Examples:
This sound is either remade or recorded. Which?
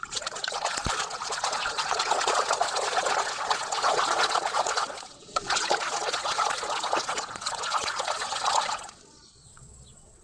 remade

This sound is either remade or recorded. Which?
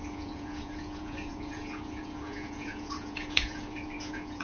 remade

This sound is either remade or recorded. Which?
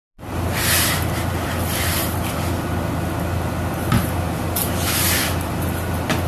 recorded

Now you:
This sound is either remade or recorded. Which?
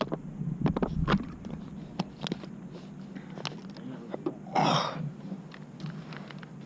recorded